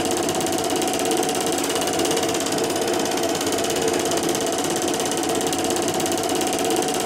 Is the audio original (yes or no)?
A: yes